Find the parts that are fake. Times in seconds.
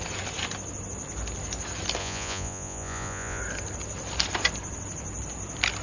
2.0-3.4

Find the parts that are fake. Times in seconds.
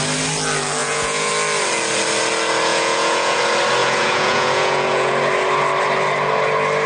0.8-1.3; 2.7-3.4; 3.8-5.1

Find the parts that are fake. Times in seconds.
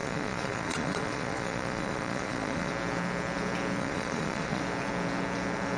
0.0-2.7; 3.8-4.6